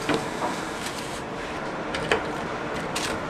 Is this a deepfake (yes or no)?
yes